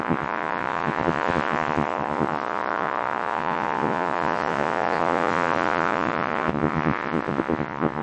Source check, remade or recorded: remade